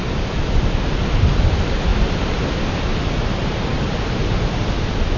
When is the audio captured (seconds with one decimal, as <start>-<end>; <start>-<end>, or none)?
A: 0.0-3.7; 4.6-5.2